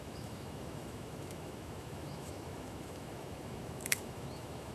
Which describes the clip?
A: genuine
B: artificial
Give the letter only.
B